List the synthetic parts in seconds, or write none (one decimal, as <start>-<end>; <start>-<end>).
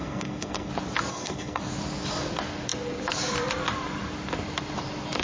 0.0-0.7; 1.1-1.6